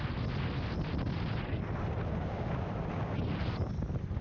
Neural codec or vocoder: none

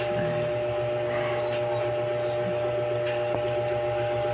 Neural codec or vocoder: none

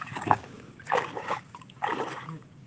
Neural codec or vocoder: codec, DAC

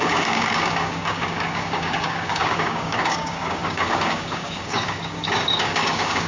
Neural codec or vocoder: codec, DAC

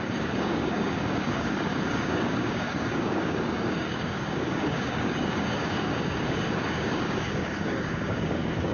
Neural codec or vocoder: codec, DAC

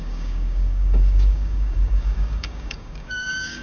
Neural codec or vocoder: codec, DAC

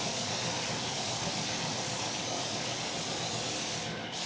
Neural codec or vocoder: codec, DAC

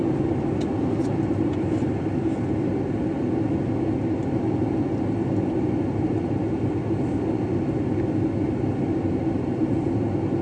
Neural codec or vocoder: none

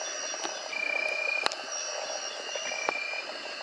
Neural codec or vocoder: none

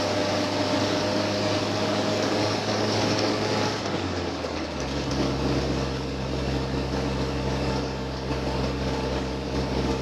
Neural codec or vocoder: codec, DAC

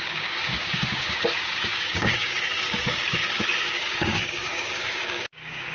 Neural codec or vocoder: codec, DAC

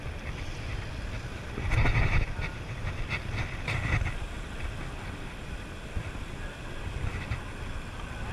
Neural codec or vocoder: none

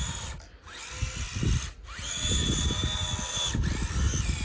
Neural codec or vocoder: none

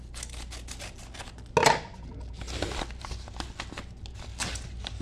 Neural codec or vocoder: none